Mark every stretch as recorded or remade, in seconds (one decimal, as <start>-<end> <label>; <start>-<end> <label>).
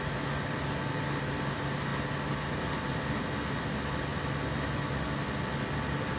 0.0-6.2 recorded